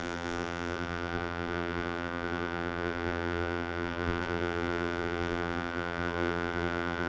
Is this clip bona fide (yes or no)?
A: no